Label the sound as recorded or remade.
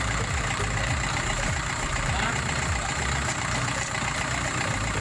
remade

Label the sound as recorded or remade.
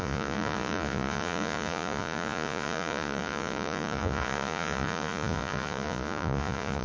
remade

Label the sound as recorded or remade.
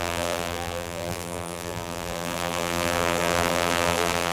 remade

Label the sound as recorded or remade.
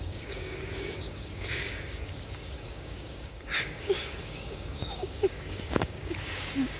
remade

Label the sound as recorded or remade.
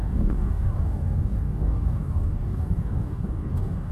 remade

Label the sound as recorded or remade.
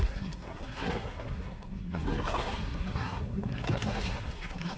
remade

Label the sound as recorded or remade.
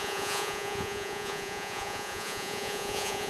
remade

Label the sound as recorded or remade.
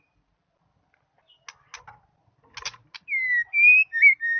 recorded